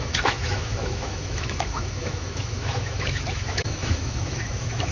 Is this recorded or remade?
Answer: remade